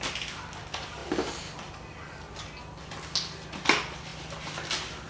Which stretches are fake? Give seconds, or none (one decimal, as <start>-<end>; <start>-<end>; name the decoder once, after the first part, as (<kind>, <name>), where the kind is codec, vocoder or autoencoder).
none